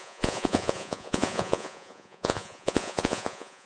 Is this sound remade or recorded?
remade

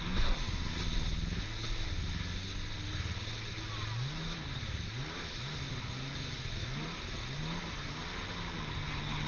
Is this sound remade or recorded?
recorded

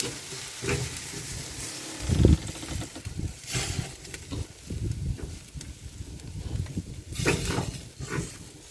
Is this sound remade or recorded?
recorded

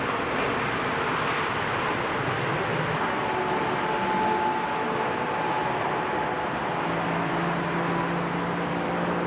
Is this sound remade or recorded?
recorded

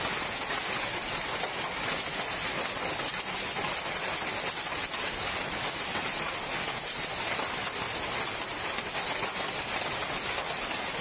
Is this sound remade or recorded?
recorded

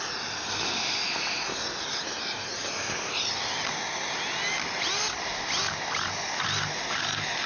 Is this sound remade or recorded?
recorded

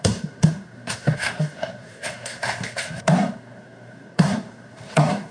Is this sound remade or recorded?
remade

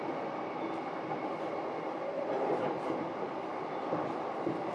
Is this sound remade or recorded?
recorded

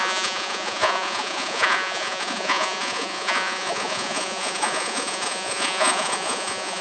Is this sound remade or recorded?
remade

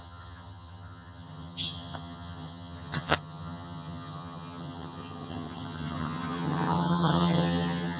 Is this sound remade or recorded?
remade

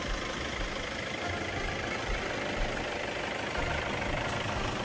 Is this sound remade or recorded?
recorded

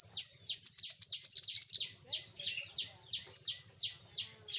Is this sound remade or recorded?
recorded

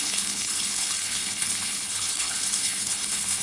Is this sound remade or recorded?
remade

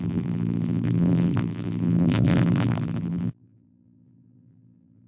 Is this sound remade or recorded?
remade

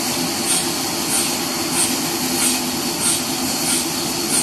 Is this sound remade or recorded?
recorded